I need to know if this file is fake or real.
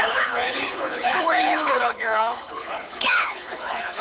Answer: fake